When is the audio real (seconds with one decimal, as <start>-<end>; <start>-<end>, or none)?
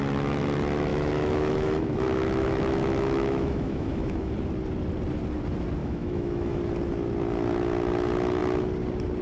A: 0.0-0.9; 4.3-5.8; 6.6-9.2